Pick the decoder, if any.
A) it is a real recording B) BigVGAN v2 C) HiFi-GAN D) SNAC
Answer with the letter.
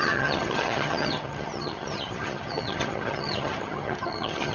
C